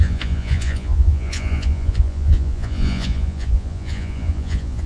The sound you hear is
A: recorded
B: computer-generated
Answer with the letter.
B